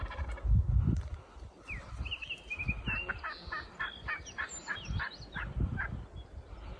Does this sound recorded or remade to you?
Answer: recorded